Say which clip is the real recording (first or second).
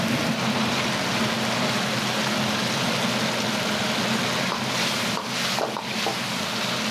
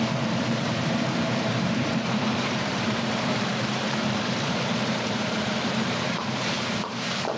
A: first